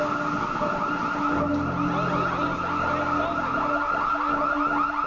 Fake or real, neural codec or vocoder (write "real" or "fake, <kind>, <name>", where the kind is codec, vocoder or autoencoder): real